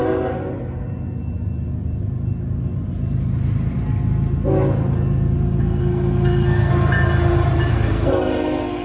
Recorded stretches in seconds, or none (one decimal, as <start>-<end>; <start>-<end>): 0.4-5.6; 6.7-7.7